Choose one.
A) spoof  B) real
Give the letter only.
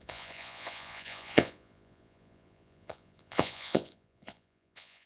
A